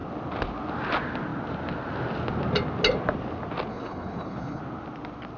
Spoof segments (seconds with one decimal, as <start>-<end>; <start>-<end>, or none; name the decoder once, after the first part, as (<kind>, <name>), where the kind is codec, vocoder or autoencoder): 3.7-4.6 (codec, HILCodec)